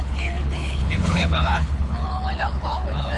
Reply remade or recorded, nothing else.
remade